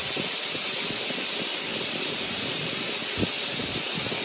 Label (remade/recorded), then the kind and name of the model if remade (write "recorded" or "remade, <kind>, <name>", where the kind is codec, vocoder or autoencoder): recorded